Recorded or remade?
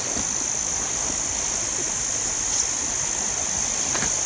recorded